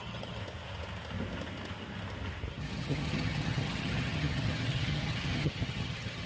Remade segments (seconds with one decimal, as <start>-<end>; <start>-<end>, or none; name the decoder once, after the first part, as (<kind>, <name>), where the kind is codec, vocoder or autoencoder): 0.0-0.4 (vocoder, HiFi-GAN); 2.5-6.3